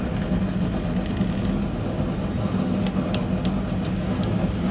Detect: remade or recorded recorded